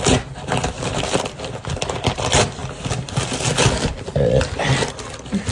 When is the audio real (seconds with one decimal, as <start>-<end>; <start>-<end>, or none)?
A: 0.0-5.5